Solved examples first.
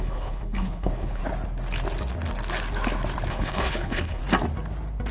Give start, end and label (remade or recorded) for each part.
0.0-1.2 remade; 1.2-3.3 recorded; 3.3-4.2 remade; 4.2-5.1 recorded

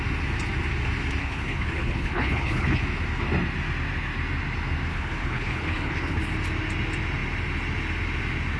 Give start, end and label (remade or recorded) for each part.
0.0-1.2 recorded; 1.2-2.8 remade; 2.8-4.9 recorded; 4.9-6.2 remade; 6.2-8.6 recorded

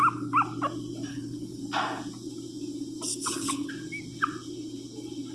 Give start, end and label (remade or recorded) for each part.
0.0-1.1 recorded; 1.1-1.6 remade; 1.6-3.1 recorded; 3.1-3.7 remade; 3.7-5.3 recorded

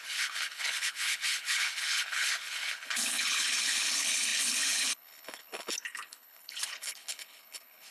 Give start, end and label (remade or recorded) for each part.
0.0-7.9 remade

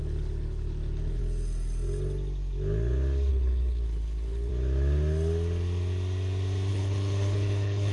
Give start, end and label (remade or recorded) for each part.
0.0-1.2 remade; 1.2-3.3 recorded; 3.3-4.5 remade; 4.5-6.7 recorded; 6.7-7.9 remade

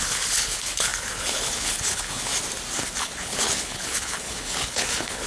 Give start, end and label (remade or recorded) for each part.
0.0-2.3 remade; 2.3-3.0 recorded; 3.0-5.3 remade

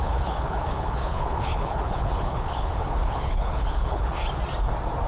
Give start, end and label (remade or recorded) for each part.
0.0-4.2 remade; 4.2-5.1 recorded

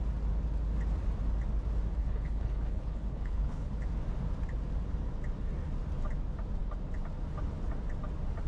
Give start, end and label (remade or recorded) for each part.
0.0-2.0 recorded; 2.0-3.7 remade; 3.7-8.5 recorded